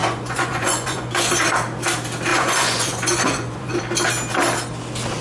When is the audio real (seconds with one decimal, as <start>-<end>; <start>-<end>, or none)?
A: 1.3-2.3; 3.8-5.2